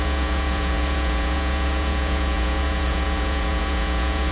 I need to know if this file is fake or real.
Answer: fake